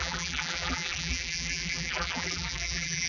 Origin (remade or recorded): remade